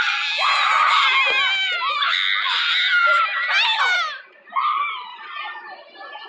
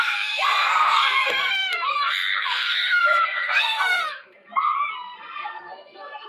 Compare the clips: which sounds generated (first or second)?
second